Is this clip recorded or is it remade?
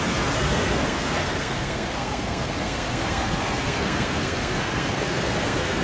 remade